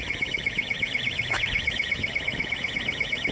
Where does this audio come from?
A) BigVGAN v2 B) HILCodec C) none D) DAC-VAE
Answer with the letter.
D